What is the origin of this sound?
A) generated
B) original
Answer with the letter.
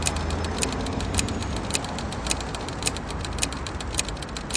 B